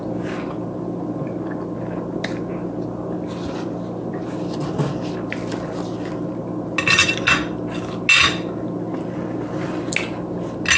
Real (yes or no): yes